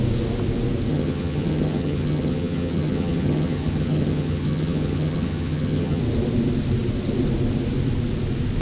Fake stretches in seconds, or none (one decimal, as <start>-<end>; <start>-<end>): 0.9-6.0